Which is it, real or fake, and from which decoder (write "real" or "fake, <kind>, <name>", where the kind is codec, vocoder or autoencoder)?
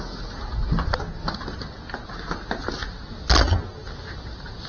real